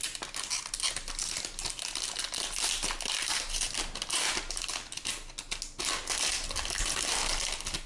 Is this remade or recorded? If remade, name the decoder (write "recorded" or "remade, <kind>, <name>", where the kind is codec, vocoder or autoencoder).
recorded